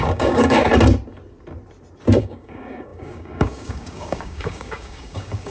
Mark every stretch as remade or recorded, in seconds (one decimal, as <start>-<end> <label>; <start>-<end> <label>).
0.0-0.7 remade; 0.7-2.2 recorded; 2.2-5.5 remade